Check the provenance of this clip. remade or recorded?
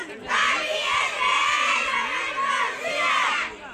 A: recorded